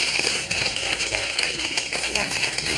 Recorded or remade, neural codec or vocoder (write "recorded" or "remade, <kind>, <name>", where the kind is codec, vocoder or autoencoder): remade, codec, SNAC